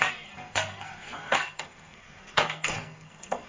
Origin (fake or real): fake